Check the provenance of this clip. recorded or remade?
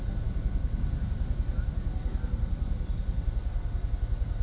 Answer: recorded